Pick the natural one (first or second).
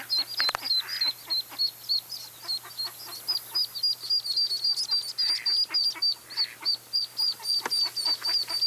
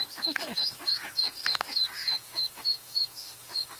first